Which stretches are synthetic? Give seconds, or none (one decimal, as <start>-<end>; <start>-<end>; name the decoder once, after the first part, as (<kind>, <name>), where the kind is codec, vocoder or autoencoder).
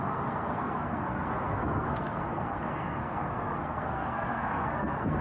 0.0-5.2 (codec, SNAC)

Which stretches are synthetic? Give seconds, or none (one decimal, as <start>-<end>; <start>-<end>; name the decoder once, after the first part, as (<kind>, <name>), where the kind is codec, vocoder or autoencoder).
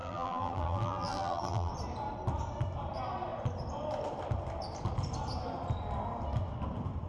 0.0-1.7 (vocoder, BigVGAN v2)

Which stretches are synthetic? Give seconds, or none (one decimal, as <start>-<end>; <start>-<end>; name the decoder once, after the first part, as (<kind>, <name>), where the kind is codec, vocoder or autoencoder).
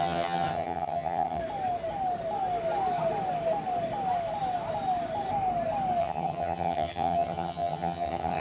0.0-1.4 (vocoder, HiFi-GAN); 6.0-8.4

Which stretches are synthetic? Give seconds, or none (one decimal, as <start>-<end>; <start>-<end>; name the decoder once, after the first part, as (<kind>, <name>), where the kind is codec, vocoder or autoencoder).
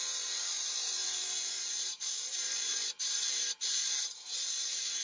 0.0-5.0 (vocoder, BigVGAN v2)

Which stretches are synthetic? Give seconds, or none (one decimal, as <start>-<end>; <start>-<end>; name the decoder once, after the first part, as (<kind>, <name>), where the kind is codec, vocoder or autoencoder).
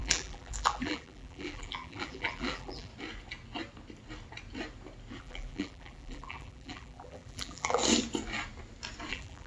0.0-2.9 (vocoder, BigVGAN v2); 5.2-7.8; 9.1-9.5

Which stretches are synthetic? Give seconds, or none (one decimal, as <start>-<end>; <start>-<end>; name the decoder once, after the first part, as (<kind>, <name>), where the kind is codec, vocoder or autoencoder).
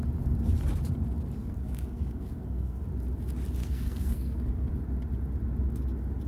1.4-2.8 (codec, SNAC); 3.6-4.7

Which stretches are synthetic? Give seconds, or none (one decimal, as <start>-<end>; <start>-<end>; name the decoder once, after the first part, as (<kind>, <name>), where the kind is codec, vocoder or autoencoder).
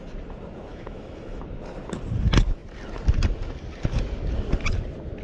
0.7-1.4 (autoencoder, DAC-VAE)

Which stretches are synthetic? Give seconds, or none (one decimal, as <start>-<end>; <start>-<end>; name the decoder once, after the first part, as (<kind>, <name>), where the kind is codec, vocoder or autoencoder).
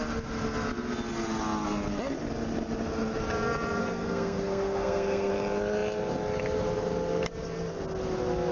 3.8-5.3 (codec, SNAC)